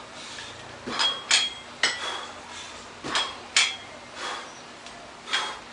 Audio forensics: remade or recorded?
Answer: recorded